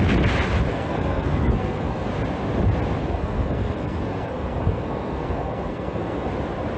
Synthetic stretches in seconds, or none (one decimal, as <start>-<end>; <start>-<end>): 0.7-2.1; 3.0-6.3